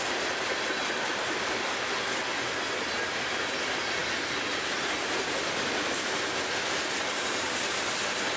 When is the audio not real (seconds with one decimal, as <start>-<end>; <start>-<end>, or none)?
none